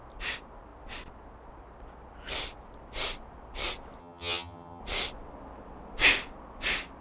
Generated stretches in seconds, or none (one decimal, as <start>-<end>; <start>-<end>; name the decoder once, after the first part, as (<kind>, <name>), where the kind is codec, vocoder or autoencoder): 4.0-4.8 (vocoder, HiFi-GAN)